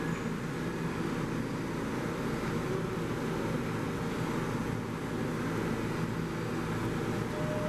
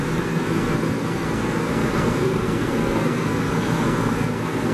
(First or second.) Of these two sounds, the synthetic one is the second